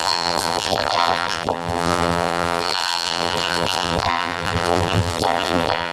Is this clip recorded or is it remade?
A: remade